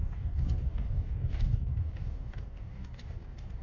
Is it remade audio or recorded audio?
remade